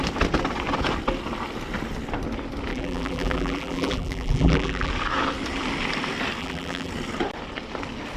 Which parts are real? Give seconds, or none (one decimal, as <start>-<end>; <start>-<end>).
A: 0.0-2.7; 4.9-6.4; 6.9-8.2